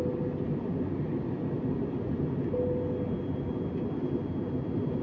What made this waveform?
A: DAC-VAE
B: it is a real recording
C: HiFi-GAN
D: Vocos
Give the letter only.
B